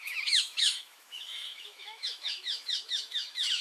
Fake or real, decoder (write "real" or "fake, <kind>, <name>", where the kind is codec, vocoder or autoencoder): fake, autoencoder, DAC-VAE